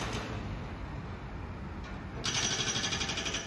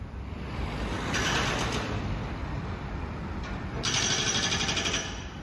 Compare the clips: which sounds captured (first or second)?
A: first